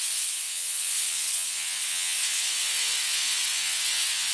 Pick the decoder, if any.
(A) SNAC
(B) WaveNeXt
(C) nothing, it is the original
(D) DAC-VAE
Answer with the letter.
B